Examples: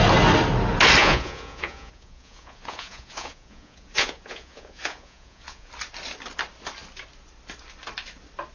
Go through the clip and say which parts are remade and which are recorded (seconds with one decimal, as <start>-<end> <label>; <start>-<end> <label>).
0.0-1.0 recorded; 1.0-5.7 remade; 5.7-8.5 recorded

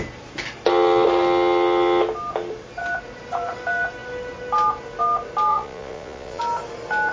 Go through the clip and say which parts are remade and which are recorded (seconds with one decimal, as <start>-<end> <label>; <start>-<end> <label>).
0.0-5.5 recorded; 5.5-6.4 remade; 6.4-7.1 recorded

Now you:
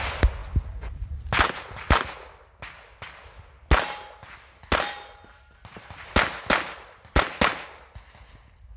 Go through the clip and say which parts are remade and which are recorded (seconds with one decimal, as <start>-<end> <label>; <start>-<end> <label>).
0.0-8.8 recorded

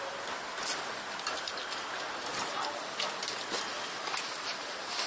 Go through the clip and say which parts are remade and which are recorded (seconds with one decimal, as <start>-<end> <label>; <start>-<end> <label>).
0.0-5.1 recorded